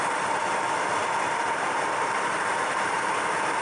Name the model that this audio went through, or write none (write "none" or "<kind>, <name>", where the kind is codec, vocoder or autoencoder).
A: none